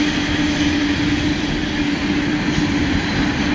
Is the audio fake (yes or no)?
no